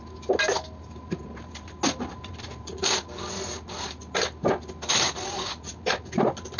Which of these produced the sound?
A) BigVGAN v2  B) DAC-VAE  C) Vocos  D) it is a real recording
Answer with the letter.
D